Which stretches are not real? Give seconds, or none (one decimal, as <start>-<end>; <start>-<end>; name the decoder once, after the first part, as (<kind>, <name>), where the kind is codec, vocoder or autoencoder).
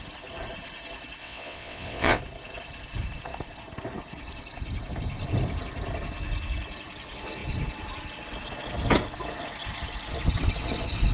1.2-2.2 (vocoder, WaveNeXt)